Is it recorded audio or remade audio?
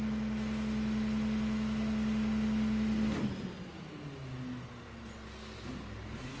recorded